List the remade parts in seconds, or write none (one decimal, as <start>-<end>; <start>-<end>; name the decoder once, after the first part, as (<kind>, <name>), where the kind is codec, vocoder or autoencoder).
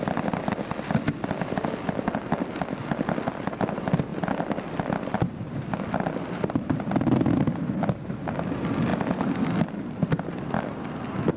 none